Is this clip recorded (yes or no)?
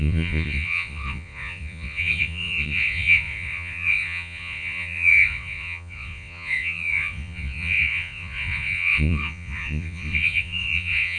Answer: no